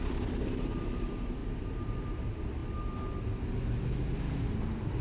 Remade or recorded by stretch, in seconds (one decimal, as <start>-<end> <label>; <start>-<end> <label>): 0.0-2.6 remade; 2.6-4.3 recorded; 4.3-5.0 remade